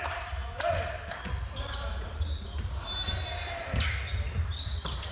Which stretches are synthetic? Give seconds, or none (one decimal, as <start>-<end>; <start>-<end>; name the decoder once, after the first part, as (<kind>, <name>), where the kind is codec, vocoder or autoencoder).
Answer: none